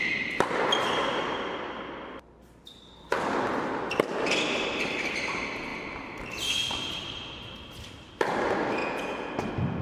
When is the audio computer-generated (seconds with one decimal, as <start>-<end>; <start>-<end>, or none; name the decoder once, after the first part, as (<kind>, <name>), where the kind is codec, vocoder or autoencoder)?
8.8-9.3 (vocoder, Vocos)